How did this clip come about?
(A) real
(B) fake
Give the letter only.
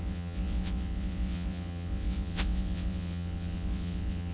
B